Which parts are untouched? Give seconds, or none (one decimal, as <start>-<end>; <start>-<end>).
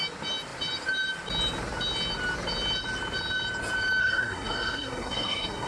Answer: 0.0-4.0